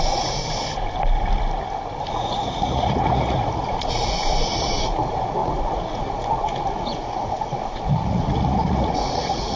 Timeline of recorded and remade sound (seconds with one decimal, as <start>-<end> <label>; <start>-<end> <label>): 0.0-0.4 remade; 0.4-2.1 recorded; 2.1-9.6 remade